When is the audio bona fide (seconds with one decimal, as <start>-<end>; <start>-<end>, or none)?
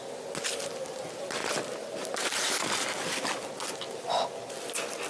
0.0-5.1